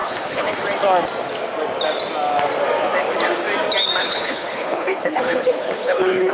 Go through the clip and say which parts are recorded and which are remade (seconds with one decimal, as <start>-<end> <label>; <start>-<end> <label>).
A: 0.0-0.6 remade; 0.6-4.0 recorded; 4.0-6.3 remade